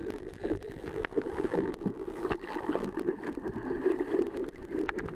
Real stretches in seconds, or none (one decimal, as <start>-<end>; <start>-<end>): 3.1-5.1